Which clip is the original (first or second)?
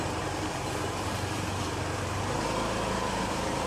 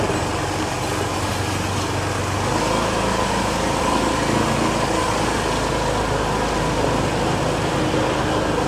second